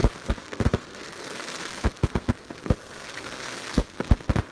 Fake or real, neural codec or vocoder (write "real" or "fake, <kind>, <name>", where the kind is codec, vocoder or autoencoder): fake, codec, SNAC